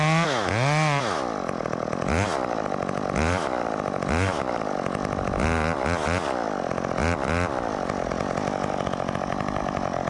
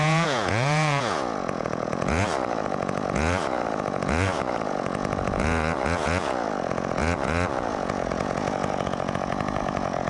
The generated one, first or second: second